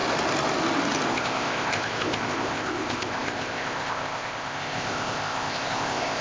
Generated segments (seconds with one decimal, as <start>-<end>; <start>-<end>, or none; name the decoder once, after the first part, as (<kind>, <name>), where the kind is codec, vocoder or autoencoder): 1.1-6.2 (codec, ZipCodec)